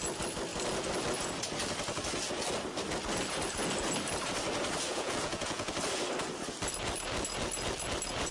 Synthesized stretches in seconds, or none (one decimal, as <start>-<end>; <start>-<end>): 4.9-5.7